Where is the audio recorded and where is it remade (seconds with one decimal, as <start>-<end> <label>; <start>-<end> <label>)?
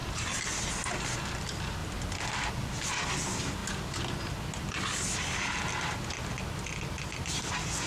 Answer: 0.0-7.9 recorded